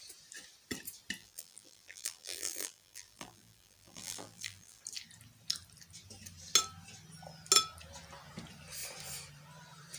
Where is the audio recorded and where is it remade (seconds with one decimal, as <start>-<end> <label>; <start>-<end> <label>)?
0.0-1.2 recorded; 1.2-4.8 remade; 4.8-10.0 recorded